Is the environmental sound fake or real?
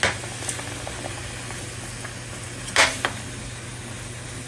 real